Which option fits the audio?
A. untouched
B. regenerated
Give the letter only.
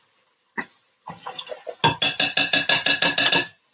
A